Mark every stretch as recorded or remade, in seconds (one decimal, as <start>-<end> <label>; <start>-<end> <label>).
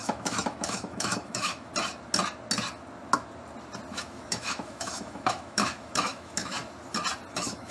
0.0-1.7 remade; 1.7-3.9 recorded; 3.9-6.6 remade; 6.6-7.3 recorded; 7.3-7.7 remade